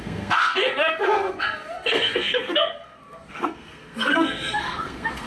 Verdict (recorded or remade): remade